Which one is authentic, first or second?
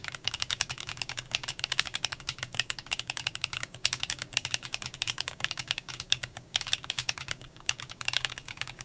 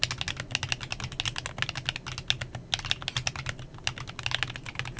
second